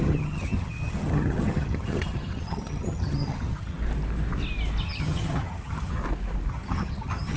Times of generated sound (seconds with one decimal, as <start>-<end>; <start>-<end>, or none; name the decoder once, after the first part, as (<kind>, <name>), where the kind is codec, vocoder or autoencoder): 0.0-3.8 (vocoder, HiFi-GAN); 4.8-6.0; 6.5-7.4